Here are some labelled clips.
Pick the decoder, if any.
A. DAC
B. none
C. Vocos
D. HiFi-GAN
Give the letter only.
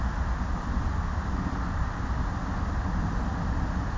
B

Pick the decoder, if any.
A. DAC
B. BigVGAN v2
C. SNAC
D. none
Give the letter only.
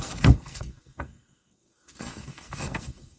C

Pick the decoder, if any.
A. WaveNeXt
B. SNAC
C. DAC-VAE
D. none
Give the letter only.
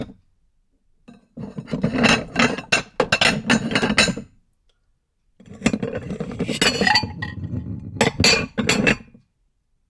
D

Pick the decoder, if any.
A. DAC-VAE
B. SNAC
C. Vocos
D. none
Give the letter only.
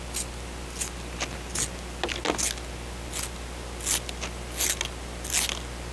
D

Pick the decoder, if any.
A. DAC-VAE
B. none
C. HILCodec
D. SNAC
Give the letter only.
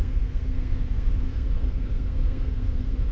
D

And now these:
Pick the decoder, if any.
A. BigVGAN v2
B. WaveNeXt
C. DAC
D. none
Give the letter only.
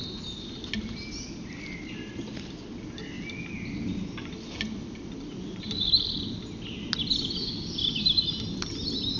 D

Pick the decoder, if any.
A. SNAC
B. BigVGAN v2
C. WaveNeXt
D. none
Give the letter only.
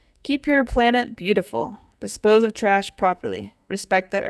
A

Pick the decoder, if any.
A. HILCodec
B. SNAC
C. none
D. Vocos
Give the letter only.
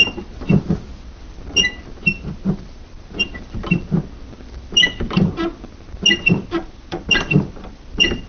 C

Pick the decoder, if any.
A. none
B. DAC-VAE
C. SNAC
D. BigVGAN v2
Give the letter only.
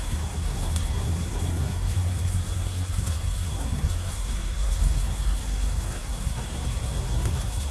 C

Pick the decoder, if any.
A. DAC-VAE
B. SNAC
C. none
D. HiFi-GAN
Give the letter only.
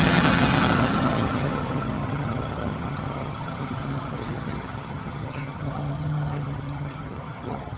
D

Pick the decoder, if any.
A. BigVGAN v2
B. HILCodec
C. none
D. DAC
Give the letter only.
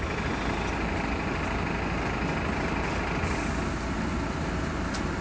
C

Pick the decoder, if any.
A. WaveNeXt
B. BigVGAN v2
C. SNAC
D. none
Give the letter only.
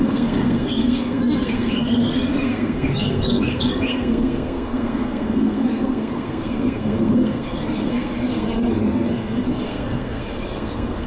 C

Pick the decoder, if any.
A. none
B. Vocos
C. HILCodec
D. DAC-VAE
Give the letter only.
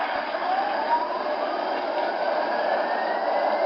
A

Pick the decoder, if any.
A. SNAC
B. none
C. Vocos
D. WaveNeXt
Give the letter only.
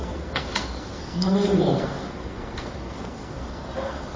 A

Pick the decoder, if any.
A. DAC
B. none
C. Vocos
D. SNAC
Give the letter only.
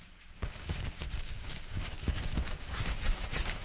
A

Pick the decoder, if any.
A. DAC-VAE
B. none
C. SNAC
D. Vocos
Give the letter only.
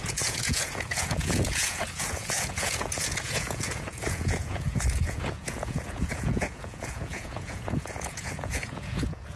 D